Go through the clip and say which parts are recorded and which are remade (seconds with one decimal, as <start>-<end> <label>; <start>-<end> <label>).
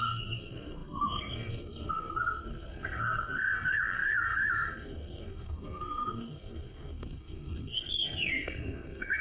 0.0-9.2 remade